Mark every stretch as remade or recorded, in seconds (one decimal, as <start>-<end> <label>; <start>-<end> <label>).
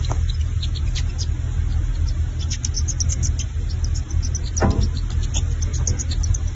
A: 0.0-6.5 recorded